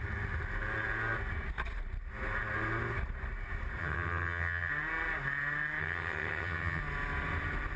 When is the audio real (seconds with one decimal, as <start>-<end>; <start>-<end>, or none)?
0.0-3.8; 4.7-5.8; 6.8-7.8